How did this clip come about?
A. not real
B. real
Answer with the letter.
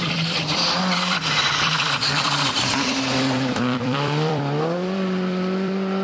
A